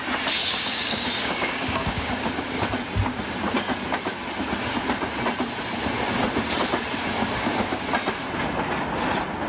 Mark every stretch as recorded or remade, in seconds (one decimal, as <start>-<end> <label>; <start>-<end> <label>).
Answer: 0.0-0.4 recorded; 0.4-2.7 remade; 2.7-7.2 recorded; 7.2-7.9 remade; 7.9-9.5 recorded